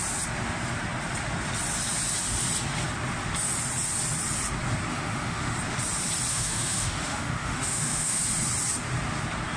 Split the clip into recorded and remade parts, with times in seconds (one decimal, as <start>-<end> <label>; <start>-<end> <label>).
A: 0.0-4.9 recorded; 4.9-5.6 remade; 5.6-6.3 recorded; 6.3-8.2 remade; 8.2-9.6 recorded